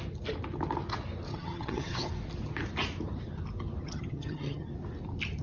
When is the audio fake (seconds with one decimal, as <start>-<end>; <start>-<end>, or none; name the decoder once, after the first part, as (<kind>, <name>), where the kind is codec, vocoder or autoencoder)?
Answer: 1.3-2.1 (vocoder, HiFi-GAN); 3.8-4.7